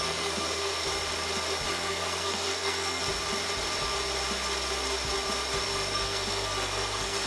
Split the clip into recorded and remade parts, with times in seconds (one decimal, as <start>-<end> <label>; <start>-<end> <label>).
0.0-0.9 remade; 0.9-1.7 recorded; 1.7-3.0 remade; 3.0-5.6 recorded; 5.6-7.3 remade